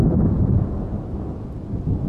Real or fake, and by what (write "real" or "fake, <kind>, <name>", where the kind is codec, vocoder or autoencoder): real